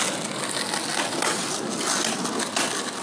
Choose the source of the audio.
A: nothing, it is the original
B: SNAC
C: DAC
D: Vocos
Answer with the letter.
A